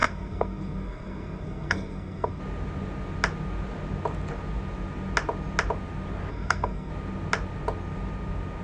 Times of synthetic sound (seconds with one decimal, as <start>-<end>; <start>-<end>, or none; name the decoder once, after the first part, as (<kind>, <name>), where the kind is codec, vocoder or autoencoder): 0.0-2.4 (codec, SNAC); 6.3-6.9

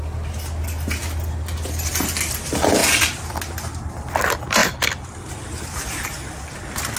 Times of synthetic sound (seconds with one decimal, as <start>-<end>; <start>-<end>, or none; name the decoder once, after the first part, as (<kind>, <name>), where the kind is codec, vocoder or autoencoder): none

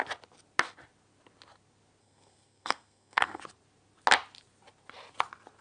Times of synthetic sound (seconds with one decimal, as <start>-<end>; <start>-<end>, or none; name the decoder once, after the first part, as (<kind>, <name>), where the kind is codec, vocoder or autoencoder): 2.0-3.4 (codec, SNAC)

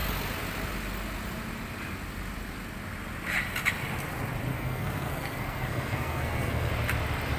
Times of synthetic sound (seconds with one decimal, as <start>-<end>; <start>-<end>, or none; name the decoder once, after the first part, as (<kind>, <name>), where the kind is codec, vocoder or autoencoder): 4.5-6.7 (codec, SNAC)

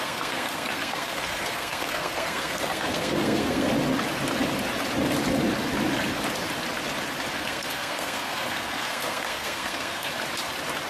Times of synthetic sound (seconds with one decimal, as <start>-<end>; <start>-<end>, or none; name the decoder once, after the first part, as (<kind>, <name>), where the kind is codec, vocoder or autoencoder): 0.0-3.7 (codec, SNAC); 7.4-10.1

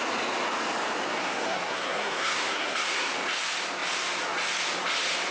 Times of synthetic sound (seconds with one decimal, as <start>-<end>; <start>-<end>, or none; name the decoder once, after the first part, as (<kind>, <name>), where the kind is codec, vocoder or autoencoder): 1.2-3.1 (codec, SNAC)